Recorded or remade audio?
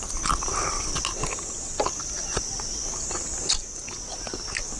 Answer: recorded